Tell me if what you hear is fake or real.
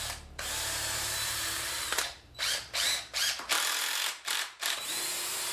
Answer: fake